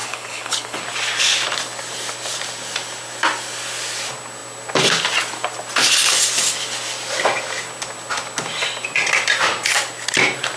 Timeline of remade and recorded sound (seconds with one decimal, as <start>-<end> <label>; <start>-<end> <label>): 0.0-0.8 remade; 0.8-10.6 recorded